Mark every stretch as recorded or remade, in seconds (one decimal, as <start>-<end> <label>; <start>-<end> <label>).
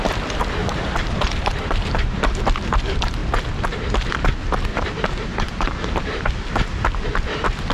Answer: 0.0-0.6 recorded; 0.6-2.4 remade; 2.4-4.7 recorded; 4.7-6.3 remade; 6.3-7.7 recorded